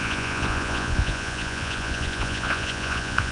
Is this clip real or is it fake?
fake